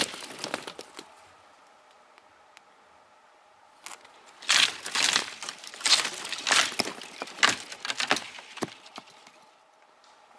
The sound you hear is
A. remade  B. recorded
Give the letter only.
B